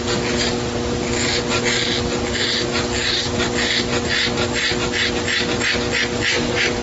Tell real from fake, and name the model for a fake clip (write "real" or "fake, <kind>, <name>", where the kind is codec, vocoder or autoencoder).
real